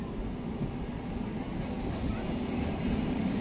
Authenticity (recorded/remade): recorded